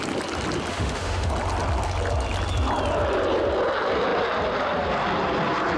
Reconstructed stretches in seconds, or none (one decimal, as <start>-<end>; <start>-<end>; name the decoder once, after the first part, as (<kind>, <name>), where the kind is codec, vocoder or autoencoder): 0.7-1.3 (autoencoder, DAC-VAE)